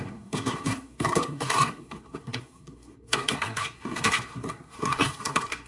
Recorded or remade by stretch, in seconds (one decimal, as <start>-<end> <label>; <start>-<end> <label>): 0.0-5.7 remade